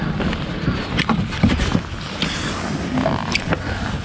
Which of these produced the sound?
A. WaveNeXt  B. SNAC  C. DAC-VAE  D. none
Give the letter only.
D